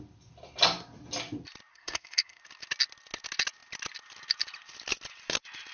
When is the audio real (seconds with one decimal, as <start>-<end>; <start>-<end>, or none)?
0.0-1.7; 2.4-5.7